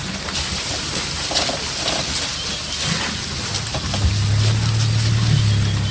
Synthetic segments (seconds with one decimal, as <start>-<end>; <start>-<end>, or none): none

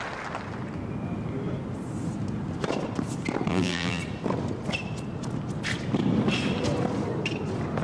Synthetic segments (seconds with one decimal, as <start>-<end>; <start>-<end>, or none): 3.5-4.0

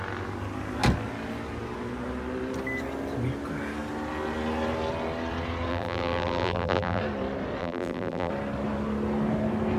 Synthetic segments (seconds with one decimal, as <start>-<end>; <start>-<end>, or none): 5.7-7.0; 7.6-8.3

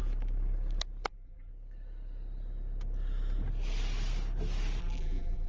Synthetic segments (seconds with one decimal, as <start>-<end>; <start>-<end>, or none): 1.1-1.5; 4.8-5.5

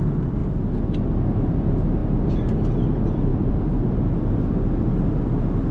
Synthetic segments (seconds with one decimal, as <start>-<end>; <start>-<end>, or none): 3.3-3.9